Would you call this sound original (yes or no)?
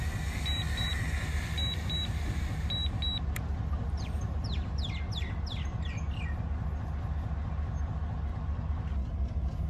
yes